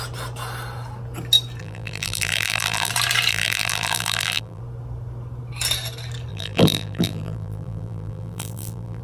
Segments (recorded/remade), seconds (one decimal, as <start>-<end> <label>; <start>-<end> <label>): 0.0-1.6 recorded; 1.6-2.9 remade; 2.9-3.3 recorded; 3.3-4.6 remade; 4.6-6.3 recorded; 6.3-9.0 remade